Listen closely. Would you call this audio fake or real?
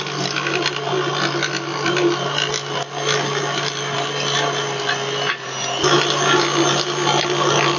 real